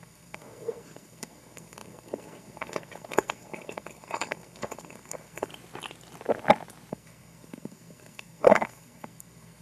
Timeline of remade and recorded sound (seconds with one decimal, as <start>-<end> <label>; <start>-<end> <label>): 0.0-5.5 remade; 5.5-6.9 recorded; 6.9-9.6 remade